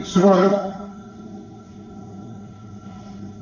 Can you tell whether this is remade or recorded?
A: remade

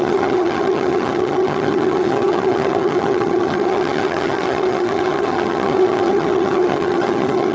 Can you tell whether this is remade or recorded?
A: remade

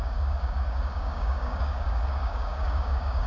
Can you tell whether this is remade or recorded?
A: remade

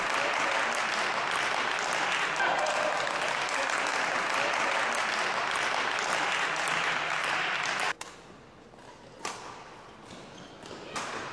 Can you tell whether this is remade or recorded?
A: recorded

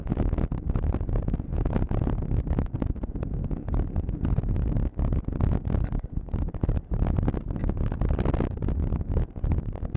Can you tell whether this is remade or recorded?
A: recorded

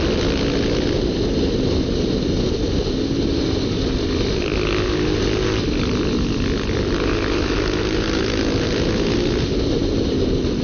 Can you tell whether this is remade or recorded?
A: recorded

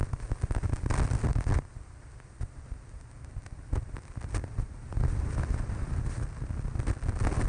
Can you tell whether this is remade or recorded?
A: recorded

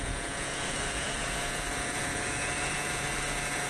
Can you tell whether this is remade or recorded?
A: remade